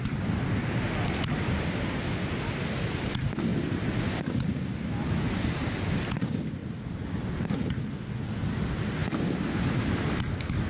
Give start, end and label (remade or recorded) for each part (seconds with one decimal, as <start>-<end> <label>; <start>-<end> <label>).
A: 0.0-10.7 recorded